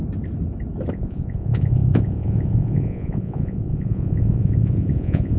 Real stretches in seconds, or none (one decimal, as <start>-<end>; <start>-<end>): 0.0-0.9